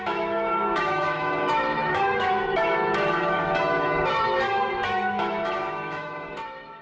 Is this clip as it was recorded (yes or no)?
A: no